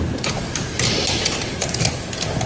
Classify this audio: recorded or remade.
remade